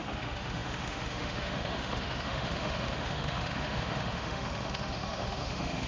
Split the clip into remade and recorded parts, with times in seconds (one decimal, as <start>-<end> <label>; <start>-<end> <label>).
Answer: 0.0-5.9 remade